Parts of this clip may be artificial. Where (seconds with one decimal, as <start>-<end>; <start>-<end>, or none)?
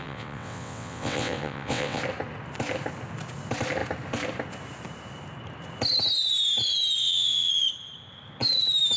0.0-2.0; 7.0-7.5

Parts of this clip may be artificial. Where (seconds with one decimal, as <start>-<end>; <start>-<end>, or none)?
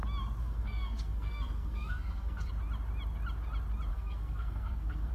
0.4-2.5; 3.9-5.1